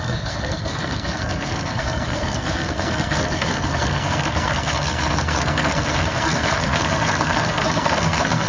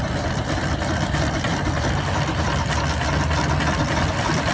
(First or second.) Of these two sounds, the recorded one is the second